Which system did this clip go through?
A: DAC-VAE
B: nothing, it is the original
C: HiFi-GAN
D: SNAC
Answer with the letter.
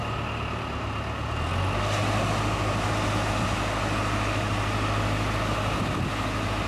B